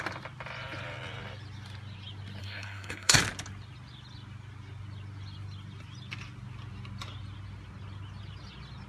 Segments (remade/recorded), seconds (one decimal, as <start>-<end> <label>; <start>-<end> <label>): 0.0-2.4 recorded; 2.4-3.2 remade; 3.2-8.9 recorded

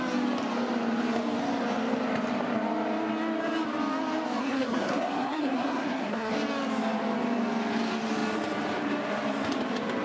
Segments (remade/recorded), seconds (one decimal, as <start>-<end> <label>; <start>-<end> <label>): 0.0-4.4 recorded; 4.4-6.3 remade; 6.3-10.0 recorded